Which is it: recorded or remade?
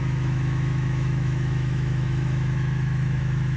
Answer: remade